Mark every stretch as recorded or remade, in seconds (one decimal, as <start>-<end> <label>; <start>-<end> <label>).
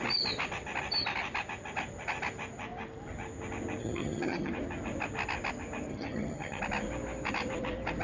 0.0-3.8 recorded; 3.8-4.5 remade; 4.5-5.9 recorded; 5.9-6.6 remade; 6.6-8.0 recorded